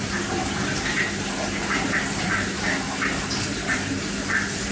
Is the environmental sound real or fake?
real